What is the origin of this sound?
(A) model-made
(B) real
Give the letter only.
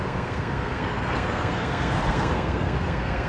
A